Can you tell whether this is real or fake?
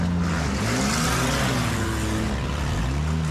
real